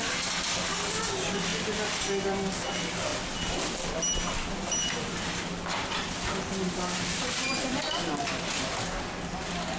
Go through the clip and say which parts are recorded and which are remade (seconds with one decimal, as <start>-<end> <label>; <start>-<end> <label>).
0.0-9.8 recorded